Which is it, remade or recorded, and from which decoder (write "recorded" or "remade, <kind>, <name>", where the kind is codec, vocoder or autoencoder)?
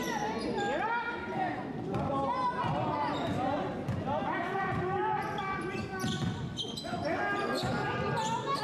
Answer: recorded